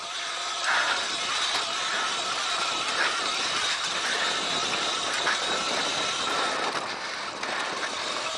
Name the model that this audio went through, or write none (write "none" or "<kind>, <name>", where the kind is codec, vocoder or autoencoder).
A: none